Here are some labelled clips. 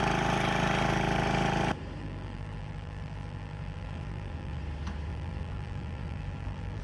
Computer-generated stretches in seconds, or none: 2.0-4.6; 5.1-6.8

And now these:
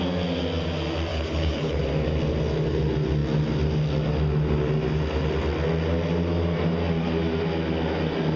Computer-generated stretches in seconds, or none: 1.1-1.8

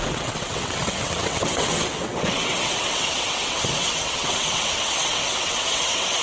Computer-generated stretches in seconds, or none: 0.0-6.2

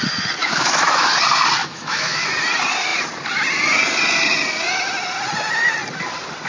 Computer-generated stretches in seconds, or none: 0.4-1.1; 1.6-2.3

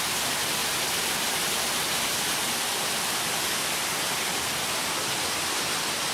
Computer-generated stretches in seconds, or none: none

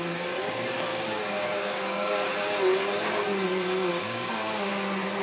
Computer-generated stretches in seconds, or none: 0.9-2.3; 3.9-4.7